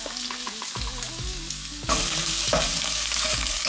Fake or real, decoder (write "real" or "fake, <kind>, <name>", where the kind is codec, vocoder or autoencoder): fake, codec, DAC